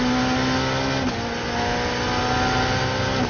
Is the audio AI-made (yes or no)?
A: no